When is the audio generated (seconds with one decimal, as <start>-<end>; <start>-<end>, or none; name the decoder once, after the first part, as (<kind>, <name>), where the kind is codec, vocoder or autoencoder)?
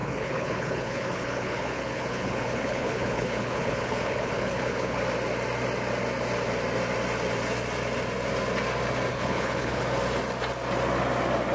0.0-5.0 (codec, HILCodec); 9.1-9.8